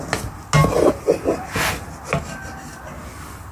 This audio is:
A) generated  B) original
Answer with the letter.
B